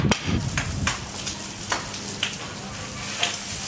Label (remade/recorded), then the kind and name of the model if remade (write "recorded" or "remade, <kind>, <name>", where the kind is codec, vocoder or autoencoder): recorded